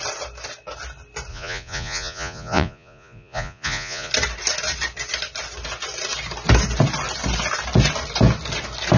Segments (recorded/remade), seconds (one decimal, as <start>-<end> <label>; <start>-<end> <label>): 0.0-1.3 recorded; 1.3-4.1 remade; 4.1-9.0 recorded

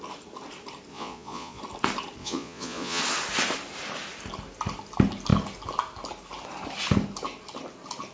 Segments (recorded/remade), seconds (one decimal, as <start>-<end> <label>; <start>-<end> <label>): 0.0-0.9 recorded; 0.9-1.6 remade; 1.6-2.2 recorded; 2.2-3.0 remade; 3.0-8.1 recorded

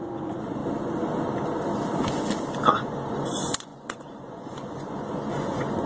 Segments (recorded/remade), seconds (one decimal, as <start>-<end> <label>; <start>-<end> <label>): 0.0-0.6 remade; 0.6-2.7 recorded; 2.7-5.9 remade